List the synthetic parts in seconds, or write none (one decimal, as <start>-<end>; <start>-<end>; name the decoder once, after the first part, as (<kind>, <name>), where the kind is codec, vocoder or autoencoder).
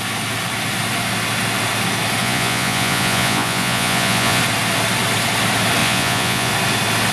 2.2-4.4 (vocoder, Vocos); 5.8-6.5